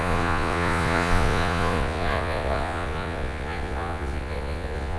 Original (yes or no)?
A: no